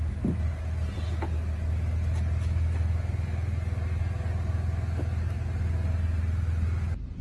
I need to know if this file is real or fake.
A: real